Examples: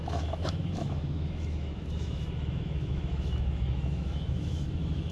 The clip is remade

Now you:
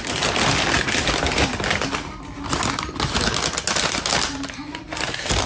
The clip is recorded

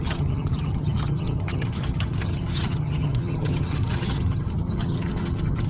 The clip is remade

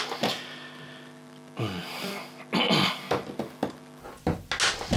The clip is recorded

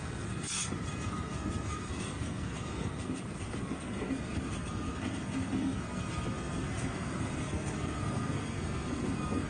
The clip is remade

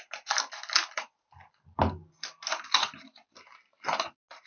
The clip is recorded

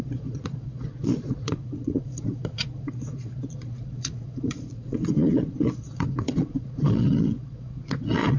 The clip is remade